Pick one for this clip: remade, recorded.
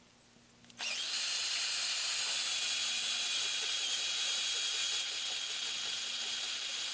recorded